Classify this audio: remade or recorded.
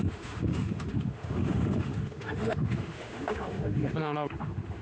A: remade